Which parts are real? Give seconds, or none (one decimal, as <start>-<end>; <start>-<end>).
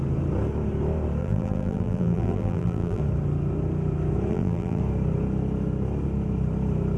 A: 0.0-1.2; 3.0-4.3; 4.8-7.0